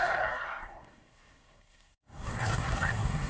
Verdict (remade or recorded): remade